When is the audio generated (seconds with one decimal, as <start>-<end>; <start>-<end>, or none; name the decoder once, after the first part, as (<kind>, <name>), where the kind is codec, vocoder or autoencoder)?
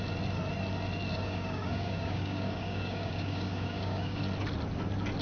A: 1.1-4.2 (codec, DAC)